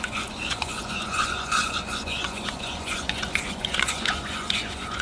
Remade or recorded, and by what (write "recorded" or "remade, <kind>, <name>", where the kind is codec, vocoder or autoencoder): remade, vocoder, Vocos